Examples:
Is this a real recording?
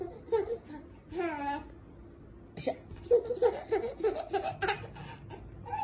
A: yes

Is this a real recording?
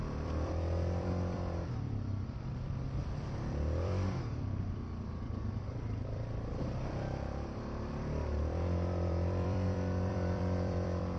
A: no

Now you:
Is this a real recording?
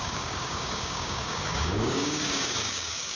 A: no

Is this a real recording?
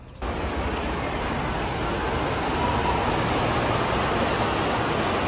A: yes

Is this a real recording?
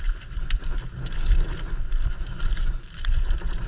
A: yes